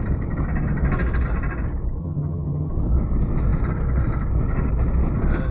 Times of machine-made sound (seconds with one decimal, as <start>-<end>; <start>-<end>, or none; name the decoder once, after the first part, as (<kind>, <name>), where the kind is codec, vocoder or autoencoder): 2.0-2.7 (vocoder, HiFi-GAN)

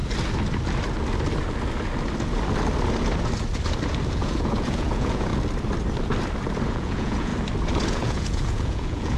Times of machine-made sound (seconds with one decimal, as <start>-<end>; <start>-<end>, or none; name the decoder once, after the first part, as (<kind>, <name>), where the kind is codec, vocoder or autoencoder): 4.1-5.3 (vocoder, Vocos); 6.7-7.3; 7.9-9.2

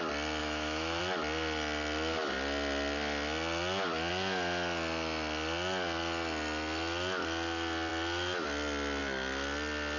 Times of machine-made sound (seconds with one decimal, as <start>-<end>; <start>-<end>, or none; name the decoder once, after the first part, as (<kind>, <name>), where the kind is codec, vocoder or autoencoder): 0.4-1.0 (autoencoder, DAC-VAE)

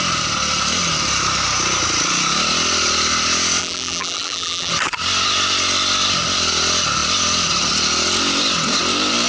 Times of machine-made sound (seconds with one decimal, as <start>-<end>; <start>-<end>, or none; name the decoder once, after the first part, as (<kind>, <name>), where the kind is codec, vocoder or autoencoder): 3.6-4.7 (vocoder, BigVGAN v2)

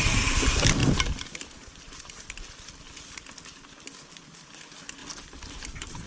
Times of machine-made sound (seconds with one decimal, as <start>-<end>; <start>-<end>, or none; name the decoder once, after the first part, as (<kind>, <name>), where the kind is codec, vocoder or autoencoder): none

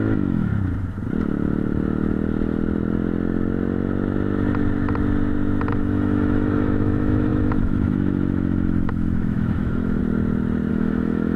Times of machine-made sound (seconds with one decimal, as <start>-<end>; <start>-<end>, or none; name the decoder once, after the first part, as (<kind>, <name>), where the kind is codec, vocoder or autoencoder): 0.0-0.5 (autoencoder, DAC-VAE); 5.7-10.0; 10.7-11.4

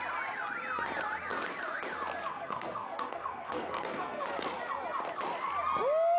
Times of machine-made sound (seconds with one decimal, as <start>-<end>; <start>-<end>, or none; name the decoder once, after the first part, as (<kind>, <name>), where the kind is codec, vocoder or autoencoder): 2.3-4.2 (codec, SNAC)

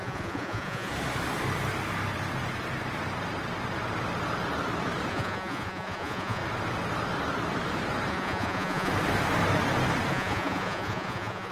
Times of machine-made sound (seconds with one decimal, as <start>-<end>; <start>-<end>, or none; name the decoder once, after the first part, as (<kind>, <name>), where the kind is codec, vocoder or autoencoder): 0.0-0.9 (vocoder, Vocos); 5.1-6.4; 8.1-8.9; 10.1-11.5